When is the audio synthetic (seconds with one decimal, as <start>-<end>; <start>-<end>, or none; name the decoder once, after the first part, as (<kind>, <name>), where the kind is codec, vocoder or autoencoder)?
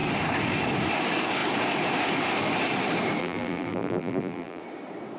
3.2-4.6 (vocoder, BigVGAN v2)